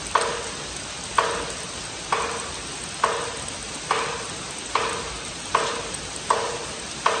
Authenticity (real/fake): real